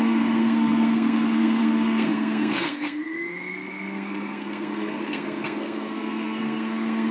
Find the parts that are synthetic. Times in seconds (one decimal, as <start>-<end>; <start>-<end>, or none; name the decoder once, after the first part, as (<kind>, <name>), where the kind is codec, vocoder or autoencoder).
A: 0.0-7.1 (codec, SNAC)